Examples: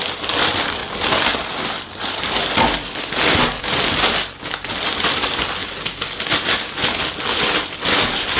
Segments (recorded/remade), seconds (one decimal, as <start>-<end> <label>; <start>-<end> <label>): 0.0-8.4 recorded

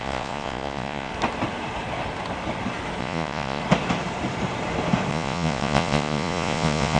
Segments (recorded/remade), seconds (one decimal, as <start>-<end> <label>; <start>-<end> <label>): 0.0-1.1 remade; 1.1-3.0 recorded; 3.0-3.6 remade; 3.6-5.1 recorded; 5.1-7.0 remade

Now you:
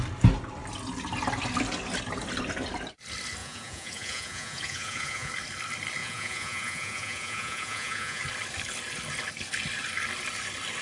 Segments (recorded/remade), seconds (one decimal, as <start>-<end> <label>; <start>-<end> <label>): 0.0-3.4 recorded; 3.4-5.3 remade; 5.3-6.0 recorded; 6.0-8.2 remade; 8.2-10.8 recorded

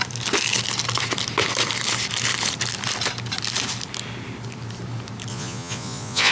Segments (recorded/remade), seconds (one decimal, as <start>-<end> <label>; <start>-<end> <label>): 0.0-5.3 recorded; 5.3-6.3 remade

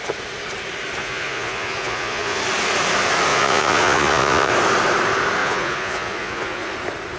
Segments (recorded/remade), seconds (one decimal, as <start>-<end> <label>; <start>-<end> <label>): 0.0-1.0 recorded; 1.0-2.4 remade; 2.4-3.3 recorded; 3.3-4.5 remade; 4.5-5.4 recorded; 5.4-6.7 remade; 6.7-7.2 recorded

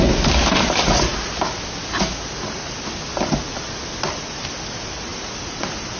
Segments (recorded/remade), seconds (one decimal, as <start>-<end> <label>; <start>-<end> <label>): 0.0-6.0 recorded